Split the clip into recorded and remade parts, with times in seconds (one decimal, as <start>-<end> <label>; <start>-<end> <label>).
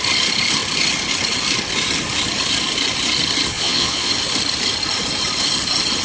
0.0-3.5 recorded; 3.5-4.1 remade; 4.1-6.0 recorded